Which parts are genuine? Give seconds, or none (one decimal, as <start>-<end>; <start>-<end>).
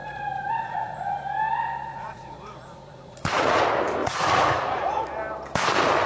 1.2-1.9; 3.6-4.0; 4.9-6.1